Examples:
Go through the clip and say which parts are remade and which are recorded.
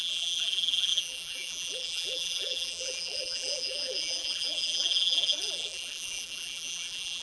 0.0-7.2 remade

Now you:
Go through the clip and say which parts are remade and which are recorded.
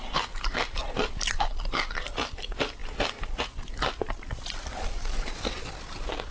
0.0-0.8 remade; 0.8-1.3 recorded; 1.3-2.8 remade; 2.8-3.7 recorded; 3.7-6.3 remade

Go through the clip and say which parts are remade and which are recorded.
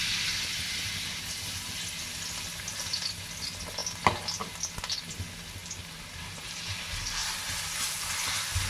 0.0-5.6 recorded; 5.6-6.8 remade; 6.8-7.2 recorded; 7.2-7.7 remade; 7.7-8.7 recorded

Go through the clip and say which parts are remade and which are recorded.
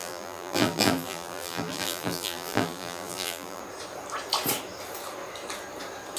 0.0-3.6 remade; 3.6-6.2 recorded